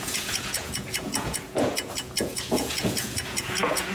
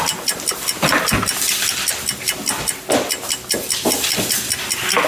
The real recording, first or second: second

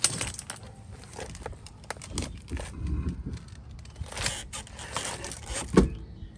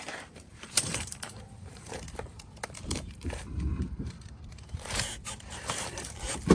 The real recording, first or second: first